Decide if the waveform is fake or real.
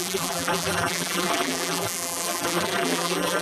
fake